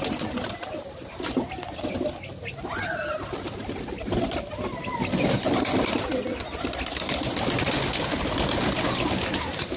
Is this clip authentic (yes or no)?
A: yes